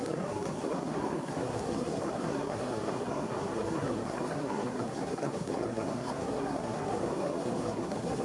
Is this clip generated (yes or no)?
yes